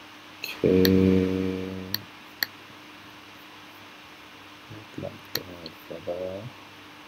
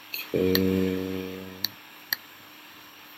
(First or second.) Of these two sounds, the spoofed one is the second